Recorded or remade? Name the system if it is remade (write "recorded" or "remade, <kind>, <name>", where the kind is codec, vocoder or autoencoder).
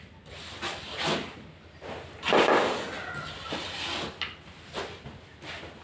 recorded